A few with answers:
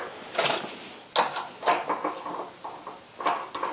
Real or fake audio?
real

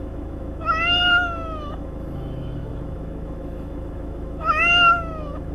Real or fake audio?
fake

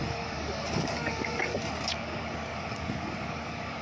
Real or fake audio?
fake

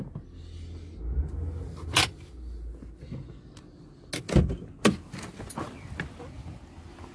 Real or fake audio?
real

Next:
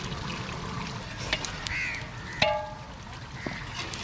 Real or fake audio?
real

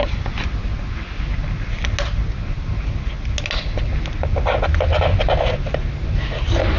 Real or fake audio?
real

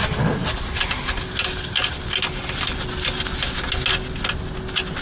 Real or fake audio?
real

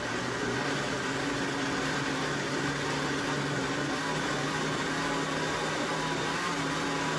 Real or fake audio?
real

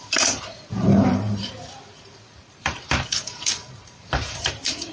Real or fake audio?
fake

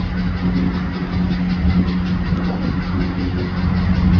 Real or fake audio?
real